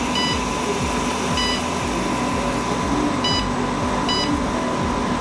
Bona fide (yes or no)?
yes